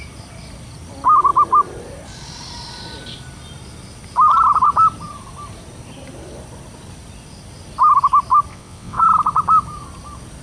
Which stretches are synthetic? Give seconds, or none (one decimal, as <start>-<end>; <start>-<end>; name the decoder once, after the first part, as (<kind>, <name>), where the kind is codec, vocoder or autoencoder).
8.5-9.0 (vocoder, WaveNeXt)